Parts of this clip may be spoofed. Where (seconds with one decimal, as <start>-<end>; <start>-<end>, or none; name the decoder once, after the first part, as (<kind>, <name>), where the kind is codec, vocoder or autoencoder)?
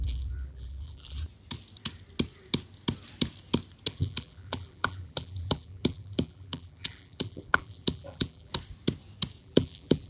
0.0-1.2 (vocoder, BigVGAN v2); 3.9-8.5; 9.4-10.1